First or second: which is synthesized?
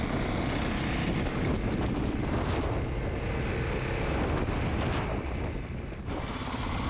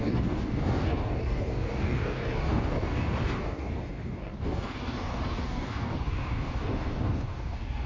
second